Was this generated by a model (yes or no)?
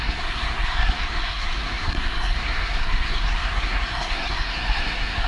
yes